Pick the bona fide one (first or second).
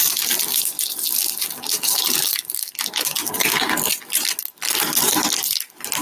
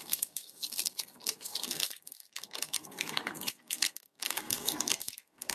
first